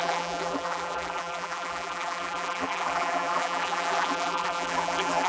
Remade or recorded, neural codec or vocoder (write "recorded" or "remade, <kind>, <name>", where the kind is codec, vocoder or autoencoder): remade, vocoder, BigVGAN v2